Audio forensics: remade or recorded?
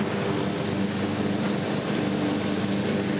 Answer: recorded